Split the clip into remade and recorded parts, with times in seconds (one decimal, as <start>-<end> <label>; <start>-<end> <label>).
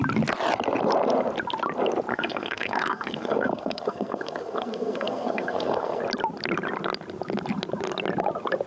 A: 0.0-2.1 recorded; 2.1-6.0 remade; 6.0-8.7 recorded